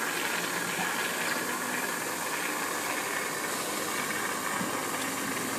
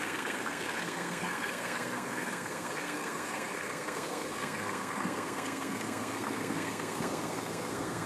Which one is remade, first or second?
second